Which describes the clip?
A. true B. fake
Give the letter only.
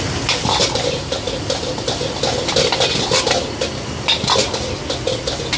A